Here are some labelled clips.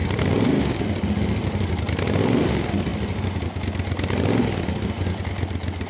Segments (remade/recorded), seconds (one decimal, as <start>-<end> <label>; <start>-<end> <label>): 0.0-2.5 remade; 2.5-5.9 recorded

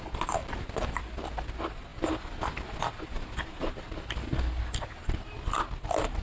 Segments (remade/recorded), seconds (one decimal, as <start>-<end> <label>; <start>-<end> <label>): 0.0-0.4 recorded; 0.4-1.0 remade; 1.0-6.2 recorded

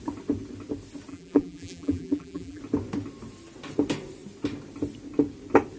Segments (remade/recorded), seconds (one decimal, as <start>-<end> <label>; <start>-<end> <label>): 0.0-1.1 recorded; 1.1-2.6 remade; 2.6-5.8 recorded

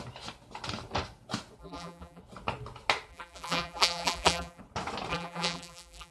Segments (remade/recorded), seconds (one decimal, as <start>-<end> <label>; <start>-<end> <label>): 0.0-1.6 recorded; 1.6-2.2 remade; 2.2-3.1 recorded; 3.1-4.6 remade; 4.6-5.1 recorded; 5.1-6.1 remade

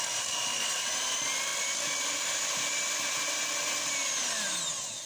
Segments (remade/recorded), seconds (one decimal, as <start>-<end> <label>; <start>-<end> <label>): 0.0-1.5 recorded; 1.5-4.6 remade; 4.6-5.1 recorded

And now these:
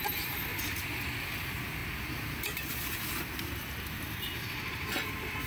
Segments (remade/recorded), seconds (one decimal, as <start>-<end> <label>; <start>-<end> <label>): 0.0-0.5 remade; 0.5-1.2 recorded; 1.2-4.0 remade; 4.0-4.7 recorded; 4.7-5.5 remade